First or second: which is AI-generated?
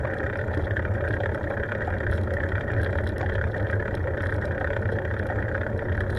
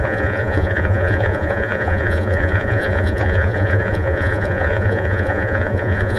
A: second